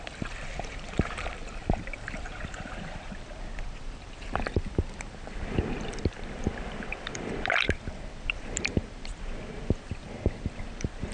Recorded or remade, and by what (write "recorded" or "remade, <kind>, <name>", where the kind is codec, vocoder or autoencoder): remade, vocoder, BigVGAN v2